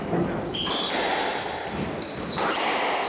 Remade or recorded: recorded